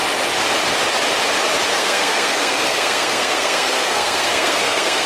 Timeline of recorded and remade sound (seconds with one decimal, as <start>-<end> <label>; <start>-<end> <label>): 0.0-1.7 recorded; 1.7-5.1 remade